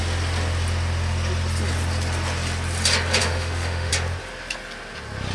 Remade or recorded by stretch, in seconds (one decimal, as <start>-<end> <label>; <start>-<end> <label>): 0.0-3.2 recorded; 3.2-3.9 remade; 3.9-5.3 recorded